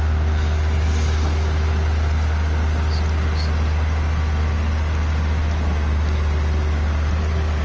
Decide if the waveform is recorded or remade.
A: recorded